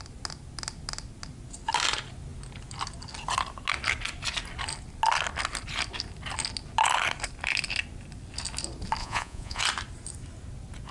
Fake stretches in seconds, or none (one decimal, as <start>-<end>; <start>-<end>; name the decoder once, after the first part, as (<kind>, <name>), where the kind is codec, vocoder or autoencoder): 9.0-9.6 (vocoder, Vocos)